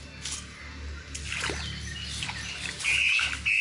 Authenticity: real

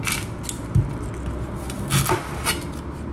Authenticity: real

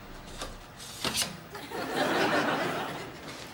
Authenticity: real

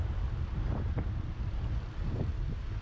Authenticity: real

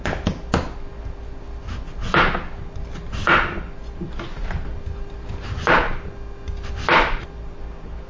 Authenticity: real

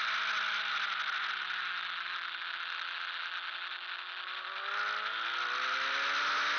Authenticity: real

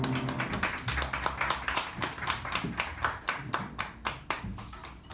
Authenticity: real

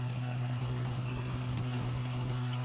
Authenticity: fake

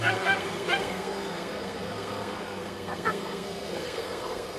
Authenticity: fake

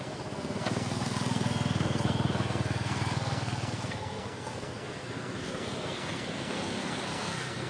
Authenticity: fake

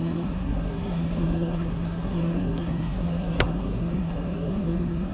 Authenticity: fake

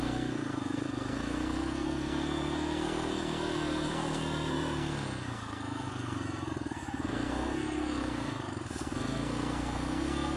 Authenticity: fake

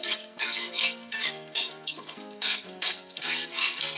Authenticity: fake